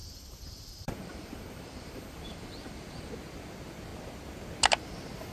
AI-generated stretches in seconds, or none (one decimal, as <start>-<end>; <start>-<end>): 0.0-3.1